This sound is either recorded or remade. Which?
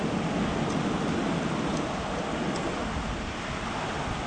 recorded